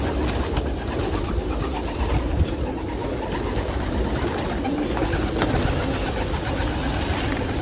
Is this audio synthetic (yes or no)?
no